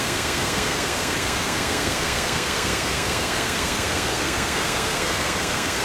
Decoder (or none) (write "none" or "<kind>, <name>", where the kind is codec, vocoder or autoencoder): codec, SNAC